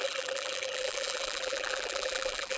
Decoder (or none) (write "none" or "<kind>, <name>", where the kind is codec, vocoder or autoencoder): vocoder, BigVGAN v2